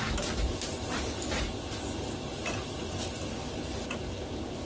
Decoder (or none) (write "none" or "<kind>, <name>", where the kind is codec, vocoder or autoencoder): none